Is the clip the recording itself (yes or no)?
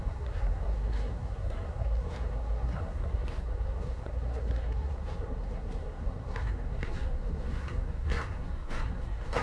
no